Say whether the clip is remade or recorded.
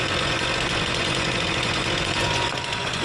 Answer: remade